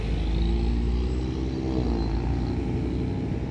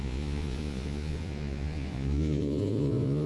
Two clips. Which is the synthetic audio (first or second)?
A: second